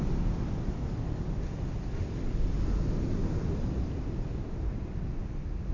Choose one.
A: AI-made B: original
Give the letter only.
B